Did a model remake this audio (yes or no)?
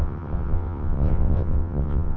yes